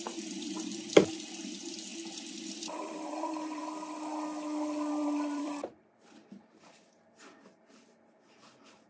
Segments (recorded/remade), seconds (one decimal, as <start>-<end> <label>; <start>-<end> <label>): 0.0-1.9 remade; 1.9-2.5 recorded; 2.5-3.6 remade; 3.6-4.9 recorded; 4.9-8.9 remade